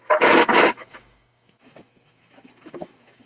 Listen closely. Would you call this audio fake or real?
fake